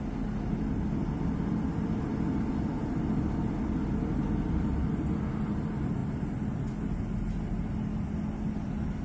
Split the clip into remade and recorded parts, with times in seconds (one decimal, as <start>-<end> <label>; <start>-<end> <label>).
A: 0.0-9.0 recorded